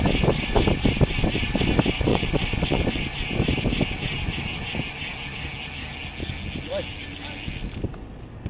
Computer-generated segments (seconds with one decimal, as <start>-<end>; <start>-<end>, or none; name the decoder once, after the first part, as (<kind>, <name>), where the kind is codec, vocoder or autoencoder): 2.1-3.0 (vocoder, WaveNeXt)